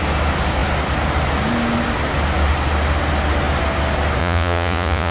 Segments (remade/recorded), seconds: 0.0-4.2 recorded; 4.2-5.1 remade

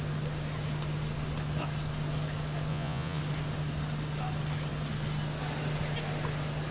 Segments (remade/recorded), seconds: 0.0-2.7 recorded; 2.7-3.2 remade; 3.2-6.7 recorded

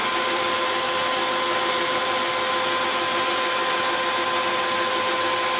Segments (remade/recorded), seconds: 0.0-5.6 recorded

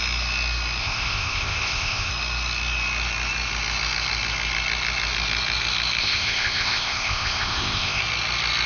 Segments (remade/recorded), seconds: 0.0-0.8 recorded; 0.8-2.1 remade; 2.1-6.0 recorded; 6.0-8.0 remade; 8.0-8.7 recorded

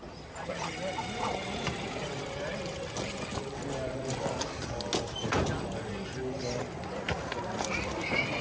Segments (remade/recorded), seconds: 0.0-8.4 recorded

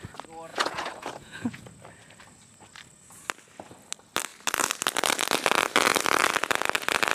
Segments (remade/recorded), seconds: 0.0-0.5 recorded; 0.5-1.6 remade; 1.6-7.1 recorded

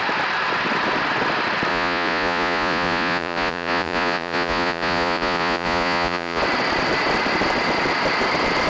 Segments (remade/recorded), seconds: 0.0-1.7 recorded; 1.7-6.4 remade; 6.4-8.7 recorded

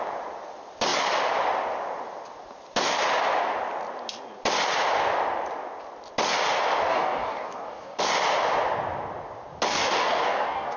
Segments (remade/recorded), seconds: 0.0-6.9 recorded; 6.9-8.0 remade; 8.0-9.7 recorded; 9.7-10.8 remade